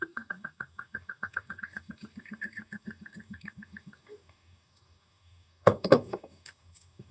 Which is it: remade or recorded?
remade